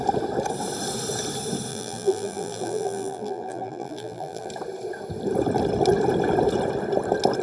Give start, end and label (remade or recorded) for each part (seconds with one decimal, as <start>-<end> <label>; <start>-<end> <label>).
0.0-1.7 recorded; 1.7-4.5 remade; 4.5-7.4 recorded